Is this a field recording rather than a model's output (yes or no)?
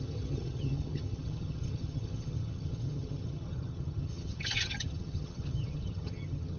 no